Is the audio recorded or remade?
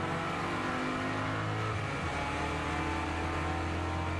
recorded